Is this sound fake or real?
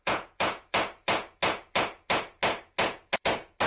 fake